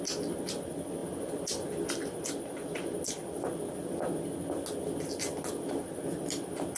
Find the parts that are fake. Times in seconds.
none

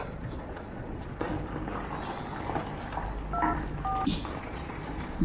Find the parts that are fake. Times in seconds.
0.0-1.3 (vocoder, Vocos); 4.4-5.2

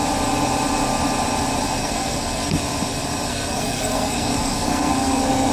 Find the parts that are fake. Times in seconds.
1.8-2.6 (codec, SNAC); 3.3-5.5

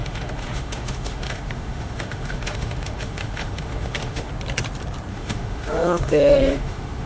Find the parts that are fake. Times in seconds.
0.0-4.3 (autoencoder, DAC-VAE); 5.1-7.1

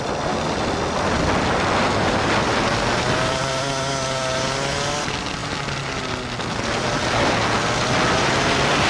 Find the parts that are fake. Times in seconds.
none